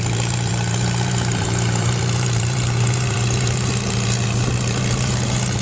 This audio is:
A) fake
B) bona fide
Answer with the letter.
A